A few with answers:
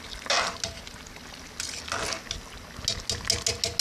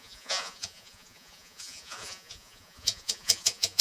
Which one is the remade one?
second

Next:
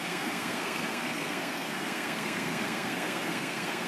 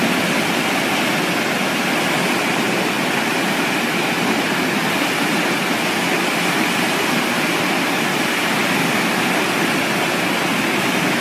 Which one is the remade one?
first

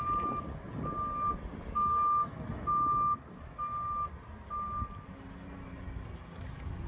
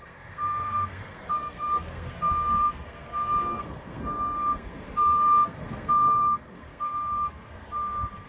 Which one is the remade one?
second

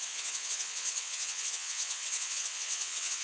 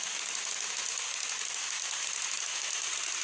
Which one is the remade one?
first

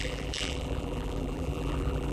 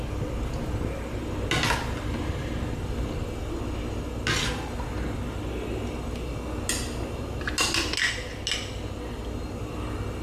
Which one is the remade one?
first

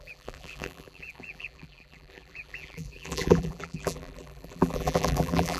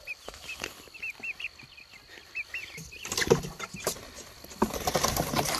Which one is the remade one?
first